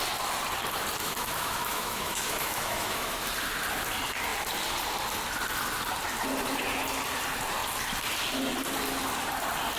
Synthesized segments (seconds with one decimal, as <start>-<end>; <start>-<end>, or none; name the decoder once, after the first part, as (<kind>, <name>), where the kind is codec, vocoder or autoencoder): 1.0-3.3 (autoencoder, DAC-VAE)